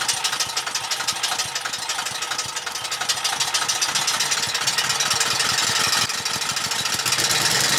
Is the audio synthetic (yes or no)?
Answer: no